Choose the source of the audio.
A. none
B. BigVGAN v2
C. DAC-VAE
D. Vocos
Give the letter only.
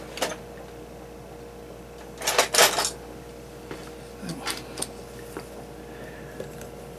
A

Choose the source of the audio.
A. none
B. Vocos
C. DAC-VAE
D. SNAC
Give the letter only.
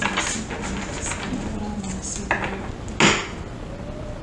A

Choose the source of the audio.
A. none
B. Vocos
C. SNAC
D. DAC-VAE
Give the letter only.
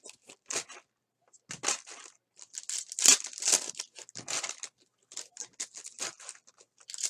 A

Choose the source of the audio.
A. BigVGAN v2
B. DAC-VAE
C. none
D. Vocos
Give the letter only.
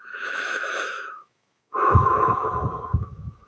B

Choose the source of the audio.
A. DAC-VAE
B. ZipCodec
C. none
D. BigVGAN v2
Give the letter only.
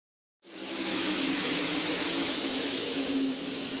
A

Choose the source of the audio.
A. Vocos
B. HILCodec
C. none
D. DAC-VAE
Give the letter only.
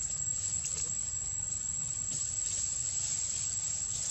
C